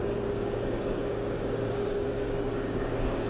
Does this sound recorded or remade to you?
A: remade